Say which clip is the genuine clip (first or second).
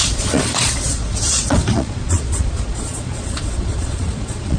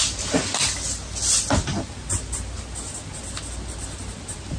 second